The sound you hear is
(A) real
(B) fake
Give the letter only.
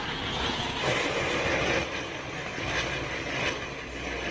A